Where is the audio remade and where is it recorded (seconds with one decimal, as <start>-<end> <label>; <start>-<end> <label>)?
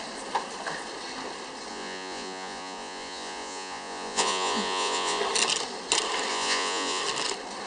0.0-1.7 recorded; 1.7-5.2 remade; 5.2-6.3 recorded; 6.3-7.0 remade; 7.0-7.7 recorded